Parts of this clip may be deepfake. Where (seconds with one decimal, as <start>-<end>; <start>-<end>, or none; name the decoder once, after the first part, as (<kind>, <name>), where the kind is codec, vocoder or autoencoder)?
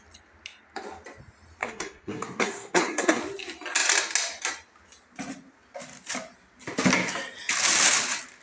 1.6-3.2 (codec, SNAC)